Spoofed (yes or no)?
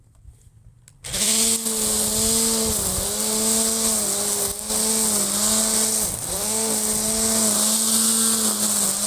no